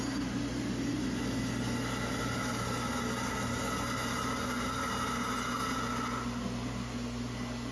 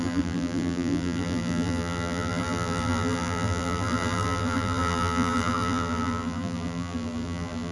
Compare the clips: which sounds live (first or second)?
first